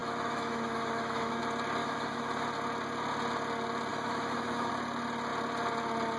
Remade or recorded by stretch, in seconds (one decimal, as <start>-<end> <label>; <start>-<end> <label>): 0.0-1.4 remade; 1.4-1.8 recorded; 1.8-2.3 remade; 2.3-3.9 recorded; 3.9-4.7 remade; 4.7-6.2 recorded